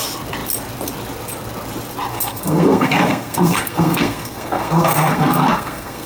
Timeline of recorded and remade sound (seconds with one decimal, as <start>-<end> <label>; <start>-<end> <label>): 0.0-2.1 recorded; 2.1-6.1 remade